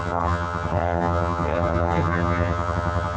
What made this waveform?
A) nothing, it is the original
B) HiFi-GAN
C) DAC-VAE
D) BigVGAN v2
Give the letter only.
B